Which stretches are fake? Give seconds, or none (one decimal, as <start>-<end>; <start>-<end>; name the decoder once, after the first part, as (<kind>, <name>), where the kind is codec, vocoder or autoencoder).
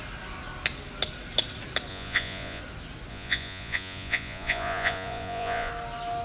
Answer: 1.9-2.6 (vocoder, Vocos); 3.1-5.7